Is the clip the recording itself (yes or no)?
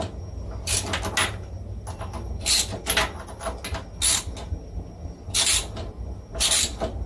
yes